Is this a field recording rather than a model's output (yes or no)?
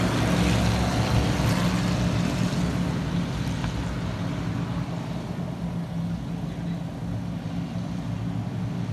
yes